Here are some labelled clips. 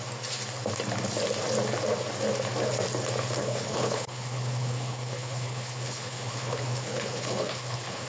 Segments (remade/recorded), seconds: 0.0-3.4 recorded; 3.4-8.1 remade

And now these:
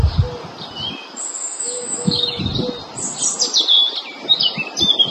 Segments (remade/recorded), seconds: 0.0-1.4 recorded; 1.4-2.4 remade; 2.4-5.1 recorded

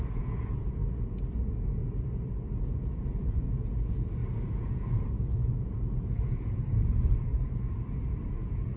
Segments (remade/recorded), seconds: 0.0-0.8 remade; 0.8-1.4 recorded; 1.4-1.8 remade; 1.8-2.5 recorded; 2.5-7.3 remade; 7.3-8.3 recorded; 8.3-8.8 remade

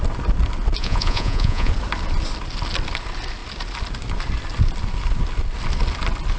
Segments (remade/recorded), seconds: 0.0-0.8 recorded; 0.8-1.7 remade; 1.7-6.4 recorded

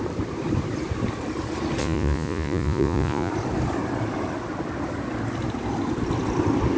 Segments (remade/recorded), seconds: 0.0-1.8 recorded; 1.8-3.3 remade; 3.3-6.8 recorded

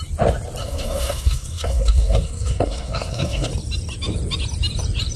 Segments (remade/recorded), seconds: 0.0-0.6 recorded; 0.6-3.5 remade; 3.5-5.2 recorded

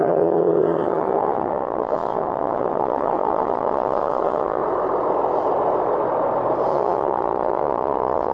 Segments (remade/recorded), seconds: 0.0-4.6 remade; 4.6-6.7 recorded; 6.7-8.3 remade

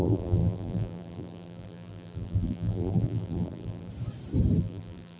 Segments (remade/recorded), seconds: 0.0-3.9 remade; 3.9-4.6 recorded; 4.6-5.2 remade